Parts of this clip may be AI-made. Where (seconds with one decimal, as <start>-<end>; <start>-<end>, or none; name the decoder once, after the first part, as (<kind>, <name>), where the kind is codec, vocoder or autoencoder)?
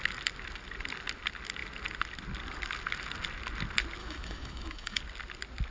4.0-5.0 (autoencoder, DAC-VAE)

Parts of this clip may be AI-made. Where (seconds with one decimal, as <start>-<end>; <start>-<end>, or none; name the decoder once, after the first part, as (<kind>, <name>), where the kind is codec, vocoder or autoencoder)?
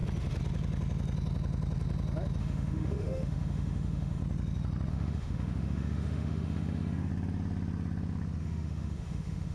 2.4-4.2 (autoencoder, DAC-VAE); 4.9-7.1; 8.4-9.5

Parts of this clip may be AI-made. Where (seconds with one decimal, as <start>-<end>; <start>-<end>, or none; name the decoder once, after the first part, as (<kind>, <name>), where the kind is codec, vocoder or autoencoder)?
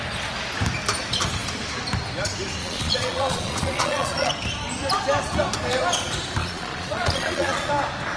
2.6-4.3 (vocoder, Vocos); 6.4-7.7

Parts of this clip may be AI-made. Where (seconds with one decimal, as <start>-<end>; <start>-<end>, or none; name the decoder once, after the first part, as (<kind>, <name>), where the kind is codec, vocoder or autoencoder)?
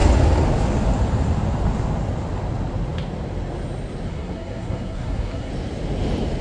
4.1-5.5 (codec, SNAC)